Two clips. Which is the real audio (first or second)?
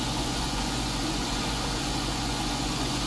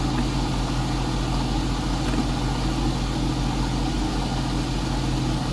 second